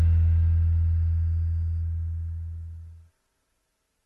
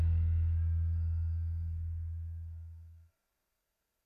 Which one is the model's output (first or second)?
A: second